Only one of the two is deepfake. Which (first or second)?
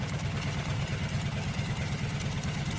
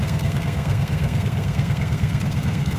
second